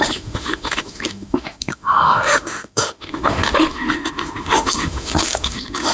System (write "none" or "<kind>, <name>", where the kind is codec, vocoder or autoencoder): autoencoder, DAC-VAE